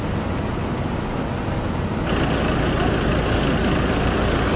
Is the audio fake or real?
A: real